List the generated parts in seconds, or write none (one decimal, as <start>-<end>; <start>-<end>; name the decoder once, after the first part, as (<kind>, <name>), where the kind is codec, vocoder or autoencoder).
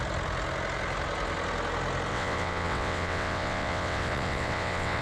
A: 2.1-5.0 (vocoder, WaveNeXt)